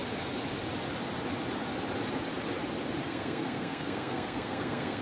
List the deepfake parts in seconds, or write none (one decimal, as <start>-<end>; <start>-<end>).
3.0-5.0